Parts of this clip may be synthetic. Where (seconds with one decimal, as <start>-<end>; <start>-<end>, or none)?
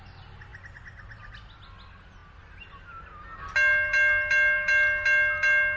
none